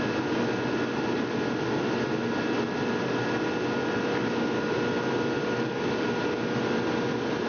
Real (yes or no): yes